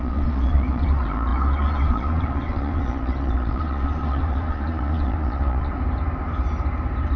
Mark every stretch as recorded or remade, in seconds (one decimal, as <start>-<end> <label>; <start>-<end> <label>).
0.0-5.7 remade; 5.7-7.2 recorded